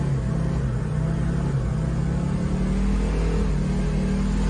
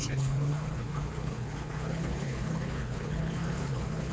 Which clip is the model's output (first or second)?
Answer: second